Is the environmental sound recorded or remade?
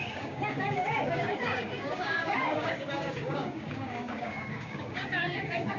remade